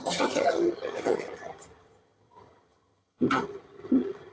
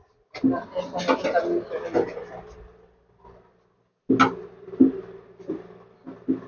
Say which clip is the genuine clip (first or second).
second